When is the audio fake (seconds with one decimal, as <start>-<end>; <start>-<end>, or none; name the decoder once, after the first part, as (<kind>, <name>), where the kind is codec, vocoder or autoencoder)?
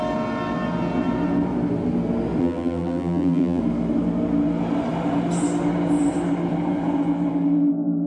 2.4-3.6 (vocoder, BigVGAN v2)